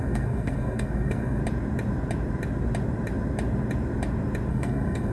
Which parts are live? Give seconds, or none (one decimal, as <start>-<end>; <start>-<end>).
1.4-4.5